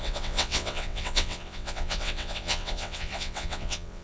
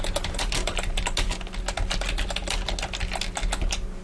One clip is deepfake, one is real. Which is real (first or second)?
second